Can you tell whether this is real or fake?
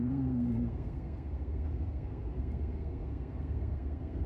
fake